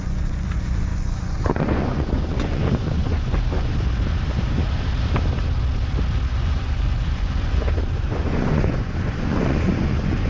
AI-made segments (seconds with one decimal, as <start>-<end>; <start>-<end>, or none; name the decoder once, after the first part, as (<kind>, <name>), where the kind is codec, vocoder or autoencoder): 0.0-3.7 (vocoder, Vocos); 6.4-10.3